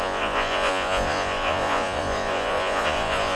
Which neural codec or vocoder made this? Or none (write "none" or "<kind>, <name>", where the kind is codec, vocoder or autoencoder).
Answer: vocoder, Vocos